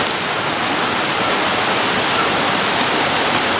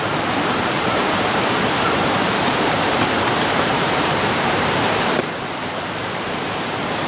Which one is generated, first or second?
second